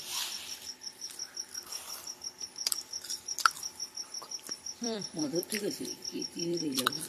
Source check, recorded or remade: remade